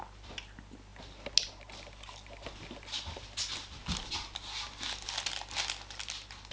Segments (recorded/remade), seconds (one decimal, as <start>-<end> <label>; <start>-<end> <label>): 0.0-6.5 recorded

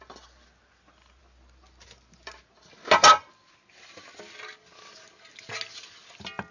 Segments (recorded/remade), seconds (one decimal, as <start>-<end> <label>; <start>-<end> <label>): 0.0-6.5 recorded

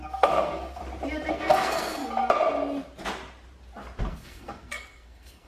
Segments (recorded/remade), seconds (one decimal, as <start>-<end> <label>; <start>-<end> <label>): 0.0-0.8 remade; 0.8-1.3 recorded; 1.3-2.0 remade; 2.0-4.0 recorded; 4.0-5.5 remade

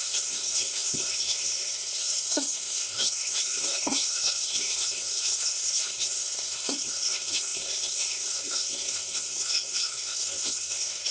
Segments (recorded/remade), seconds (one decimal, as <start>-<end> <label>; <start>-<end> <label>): 0.0-11.1 remade

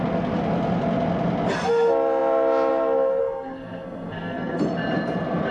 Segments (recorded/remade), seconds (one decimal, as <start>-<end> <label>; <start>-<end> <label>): 0.0-3.2 recorded; 3.2-4.6 remade; 4.6-5.5 recorded

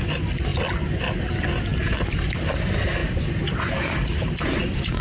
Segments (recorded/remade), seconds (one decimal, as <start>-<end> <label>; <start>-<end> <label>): 0.0-5.0 recorded